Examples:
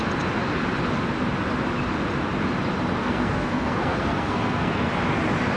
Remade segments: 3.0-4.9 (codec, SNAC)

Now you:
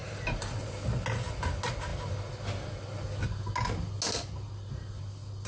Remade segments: 0.0-0.7 (vocoder, BigVGAN v2)

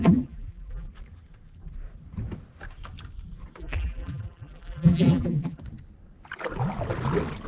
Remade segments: 0.0-0.9 (vocoder, BigVGAN v2); 3.6-5.6

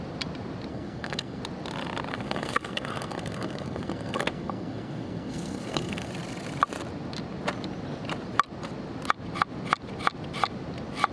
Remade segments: 0.7-1.4 (codec, SNAC); 2.1-6.1

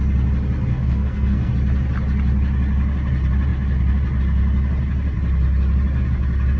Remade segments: 0.7-1.5 (codec, SNAC)